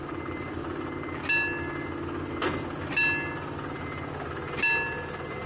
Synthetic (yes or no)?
no